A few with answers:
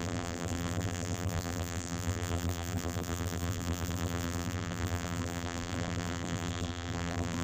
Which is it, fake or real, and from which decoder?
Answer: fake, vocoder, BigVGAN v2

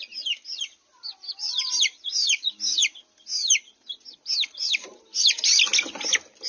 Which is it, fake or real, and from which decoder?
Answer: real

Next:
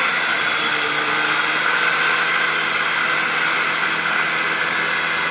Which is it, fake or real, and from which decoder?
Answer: real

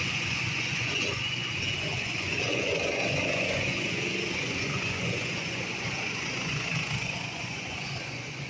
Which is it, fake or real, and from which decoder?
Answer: fake, vocoder, Vocos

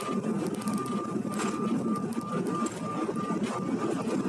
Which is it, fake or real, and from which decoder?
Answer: real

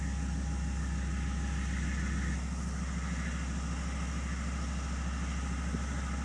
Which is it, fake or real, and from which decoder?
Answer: real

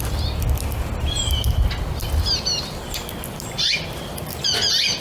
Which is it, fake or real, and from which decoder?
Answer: real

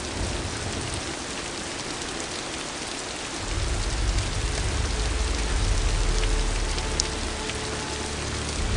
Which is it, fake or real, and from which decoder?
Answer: real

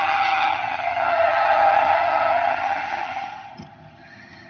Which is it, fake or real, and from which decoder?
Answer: fake, vocoder, HiFi-GAN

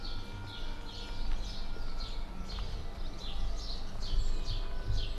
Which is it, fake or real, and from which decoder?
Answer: real